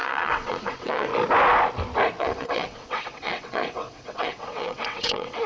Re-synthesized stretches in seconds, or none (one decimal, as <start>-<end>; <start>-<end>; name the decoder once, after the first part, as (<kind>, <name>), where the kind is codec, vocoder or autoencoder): 0.0-1.1 (vocoder, WaveNeXt); 2.2-5.5